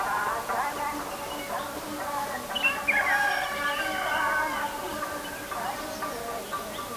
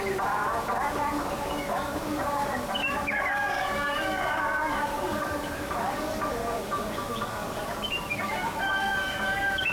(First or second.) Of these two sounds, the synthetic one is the second